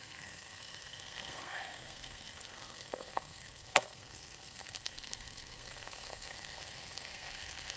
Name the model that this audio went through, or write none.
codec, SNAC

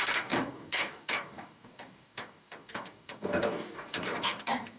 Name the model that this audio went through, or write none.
codec, DAC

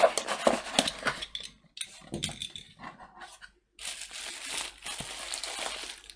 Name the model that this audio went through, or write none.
none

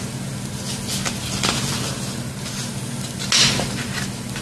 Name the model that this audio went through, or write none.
none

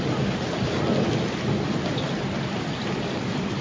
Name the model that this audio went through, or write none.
none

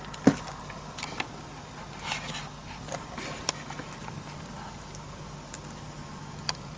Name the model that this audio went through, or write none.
none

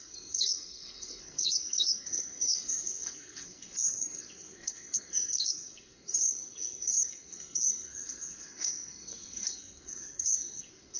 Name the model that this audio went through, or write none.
codec, SNAC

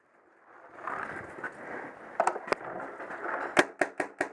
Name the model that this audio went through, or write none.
none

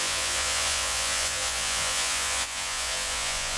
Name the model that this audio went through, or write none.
vocoder, Vocos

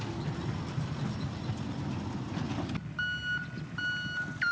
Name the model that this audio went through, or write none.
none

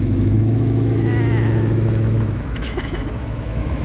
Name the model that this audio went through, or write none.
autoencoder, DAC-VAE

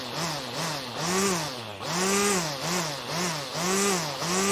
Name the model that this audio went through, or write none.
none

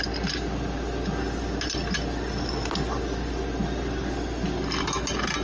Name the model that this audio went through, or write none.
none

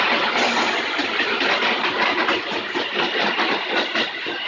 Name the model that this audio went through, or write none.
none